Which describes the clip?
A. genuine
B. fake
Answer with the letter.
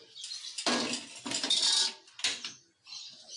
A